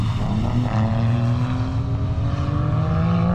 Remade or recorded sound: recorded